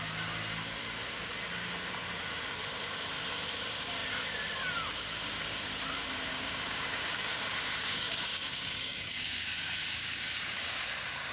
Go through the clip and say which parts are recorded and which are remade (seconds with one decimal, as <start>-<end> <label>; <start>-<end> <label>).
0.0-6.3 recorded; 6.3-10.8 remade; 10.8-11.3 recorded